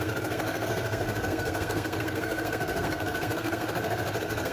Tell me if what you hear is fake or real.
fake